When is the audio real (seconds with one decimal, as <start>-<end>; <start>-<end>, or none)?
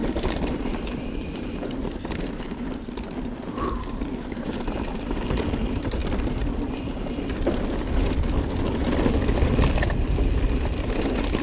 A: none